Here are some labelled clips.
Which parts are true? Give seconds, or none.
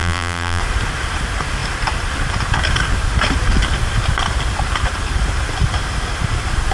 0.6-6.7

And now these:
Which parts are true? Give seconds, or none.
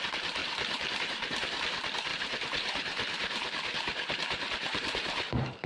0.0-0.4; 1.6-2.1